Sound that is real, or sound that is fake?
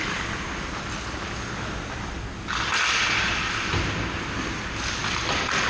real